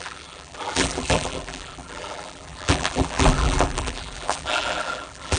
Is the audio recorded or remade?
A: remade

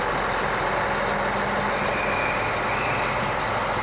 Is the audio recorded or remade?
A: recorded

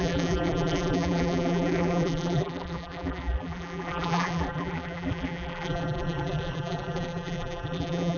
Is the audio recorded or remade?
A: remade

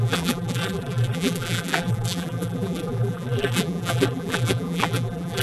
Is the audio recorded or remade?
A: remade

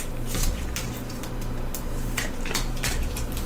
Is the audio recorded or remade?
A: remade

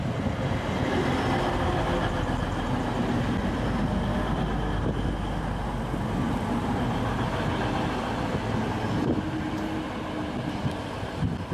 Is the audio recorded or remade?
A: recorded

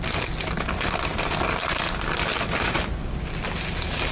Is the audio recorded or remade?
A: recorded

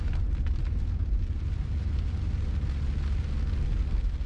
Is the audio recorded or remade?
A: recorded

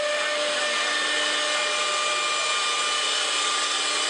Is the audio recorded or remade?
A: recorded